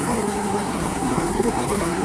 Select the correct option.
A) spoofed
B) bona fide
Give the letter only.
A